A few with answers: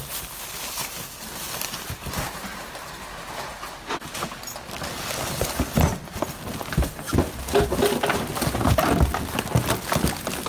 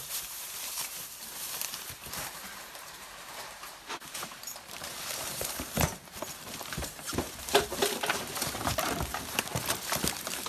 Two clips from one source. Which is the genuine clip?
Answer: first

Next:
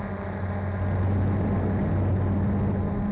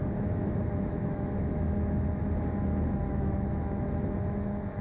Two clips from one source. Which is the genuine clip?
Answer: first